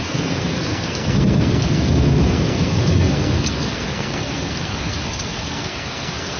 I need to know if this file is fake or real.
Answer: fake